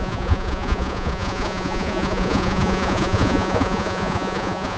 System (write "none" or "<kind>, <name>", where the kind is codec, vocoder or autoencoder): vocoder, Vocos